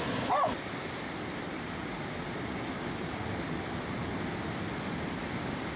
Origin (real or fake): real